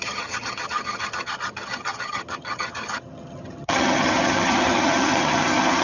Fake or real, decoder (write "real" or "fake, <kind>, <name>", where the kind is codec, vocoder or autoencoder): fake, vocoder, HiFi-GAN